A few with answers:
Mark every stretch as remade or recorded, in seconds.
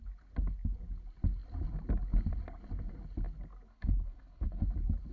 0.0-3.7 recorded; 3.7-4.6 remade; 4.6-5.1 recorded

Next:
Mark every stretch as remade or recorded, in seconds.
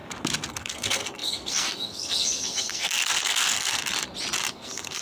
0.0-0.5 recorded; 0.5-3.8 remade; 3.8-4.5 recorded; 4.5-5.0 remade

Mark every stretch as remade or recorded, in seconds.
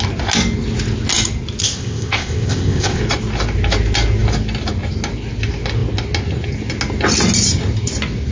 0.0-1.6 recorded; 1.6-3.0 remade; 3.0-8.3 recorded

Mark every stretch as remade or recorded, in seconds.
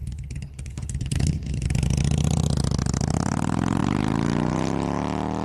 0.0-1.7 remade; 1.7-5.4 recorded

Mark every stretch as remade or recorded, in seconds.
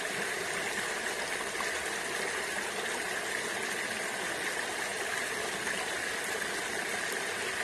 0.0-7.6 recorded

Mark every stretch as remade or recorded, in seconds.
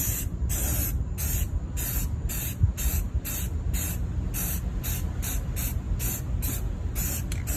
0.0-7.6 recorded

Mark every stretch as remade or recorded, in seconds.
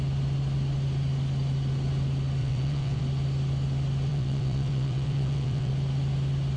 0.0-2.4 recorded; 2.4-3.0 remade; 3.0-4.1 recorded; 4.1-5.7 remade; 5.7-6.6 recorded